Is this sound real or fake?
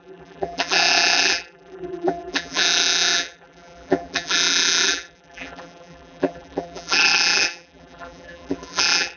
fake